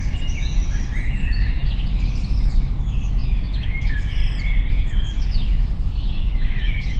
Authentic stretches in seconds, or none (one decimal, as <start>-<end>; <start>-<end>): 4.2-4.7